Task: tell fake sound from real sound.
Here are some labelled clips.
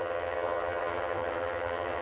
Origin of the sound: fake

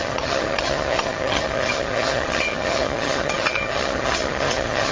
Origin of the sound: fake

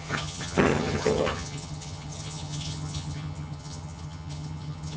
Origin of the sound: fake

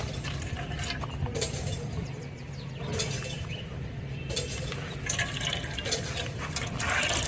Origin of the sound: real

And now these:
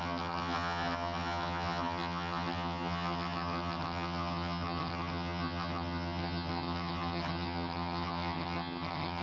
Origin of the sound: fake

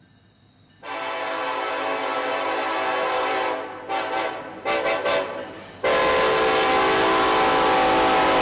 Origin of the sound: real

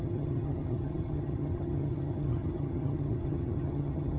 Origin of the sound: fake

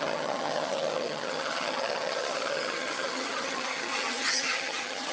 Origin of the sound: fake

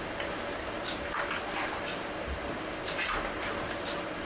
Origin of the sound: real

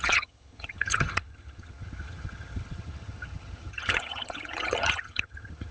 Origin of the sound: fake